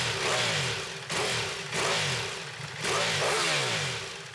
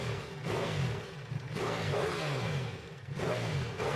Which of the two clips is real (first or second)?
first